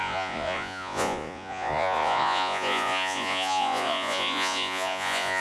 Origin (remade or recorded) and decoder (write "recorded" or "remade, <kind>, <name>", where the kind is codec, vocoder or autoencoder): remade, vocoder, Vocos